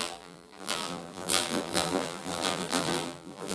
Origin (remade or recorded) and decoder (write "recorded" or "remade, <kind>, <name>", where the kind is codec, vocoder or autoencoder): remade, vocoder, BigVGAN v2